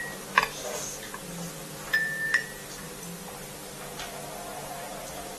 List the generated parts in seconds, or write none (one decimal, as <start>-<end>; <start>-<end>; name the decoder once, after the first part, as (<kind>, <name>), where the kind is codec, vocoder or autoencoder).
none